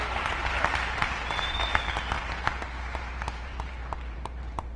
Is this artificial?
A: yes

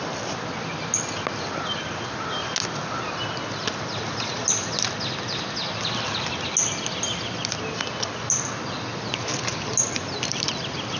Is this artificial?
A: no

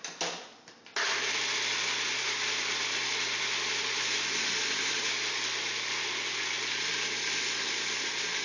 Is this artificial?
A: no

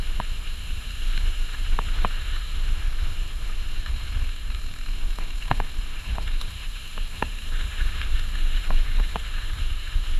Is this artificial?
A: yes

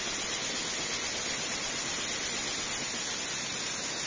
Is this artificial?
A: no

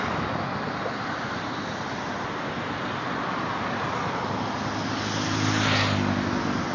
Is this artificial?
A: no